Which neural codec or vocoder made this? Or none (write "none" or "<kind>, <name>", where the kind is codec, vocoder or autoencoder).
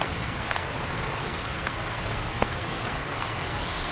codec, SNAC